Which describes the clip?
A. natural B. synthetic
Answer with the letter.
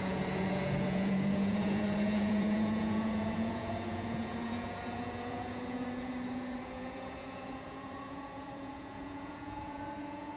B